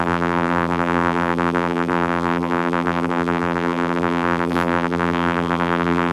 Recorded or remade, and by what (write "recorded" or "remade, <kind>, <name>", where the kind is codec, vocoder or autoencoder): remade, vocoder, BigVGAN v2